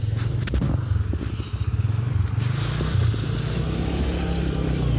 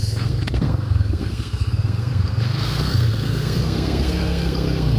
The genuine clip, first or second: first